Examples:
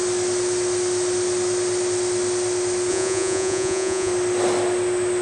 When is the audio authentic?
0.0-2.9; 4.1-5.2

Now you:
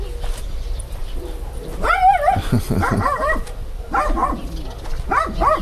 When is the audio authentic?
0.0-5.6

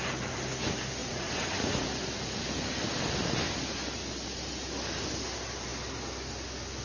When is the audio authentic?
0.0-1.0; 1.8-6.8

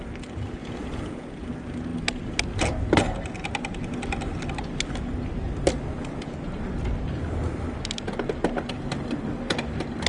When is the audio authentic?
0.0-0.6; 1.5-10.1

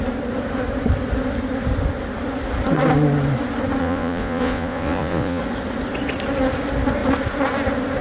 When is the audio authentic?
0.0-3.8; 5.4-8.0

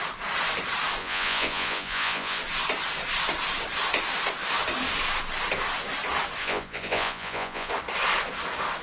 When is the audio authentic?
0.0-1.0; 2.4-6.4; 7.7-8.8

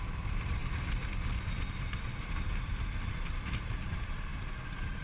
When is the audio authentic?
0.0-5.0